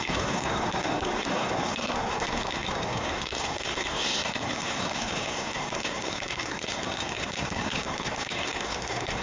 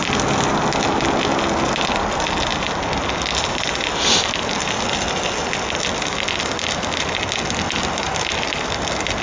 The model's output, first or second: first